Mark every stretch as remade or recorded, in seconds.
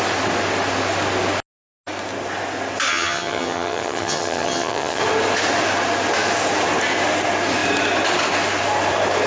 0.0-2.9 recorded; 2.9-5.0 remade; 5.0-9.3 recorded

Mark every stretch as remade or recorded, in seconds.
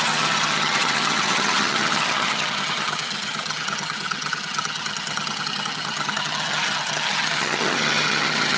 0.0-8.6 remade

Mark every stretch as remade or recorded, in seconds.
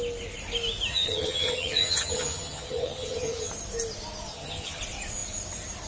0.0-0.9 recorded; 0.9-3.5 remade; 3.5-4.3 recorded; 4.3-4.8 remade; 4.8-5.9 recorded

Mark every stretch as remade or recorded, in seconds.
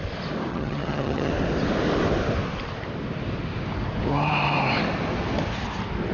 0.0-0.5 recorded; 0.5-1.3 remade; 1.3-6.1 recorded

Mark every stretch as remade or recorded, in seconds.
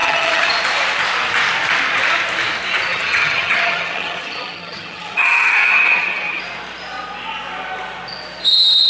0.0-0.5 remade; 0.5-2.9 recorded; 2.9-6.4 remade; 6.4-8.9 recorded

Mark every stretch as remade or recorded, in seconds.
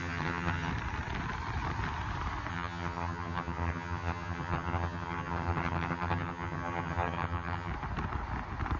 0.0-0.7 remade; 0.7-2.5 recorded; 2.5-7.7 remade; 7.7-8.8 recorded